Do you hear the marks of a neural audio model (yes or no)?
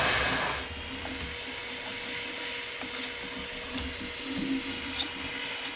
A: no